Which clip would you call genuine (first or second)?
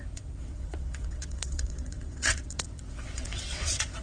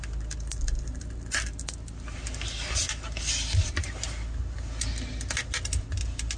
second